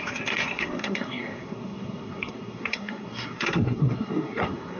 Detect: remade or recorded remade